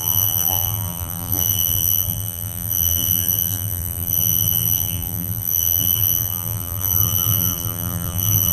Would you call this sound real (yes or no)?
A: no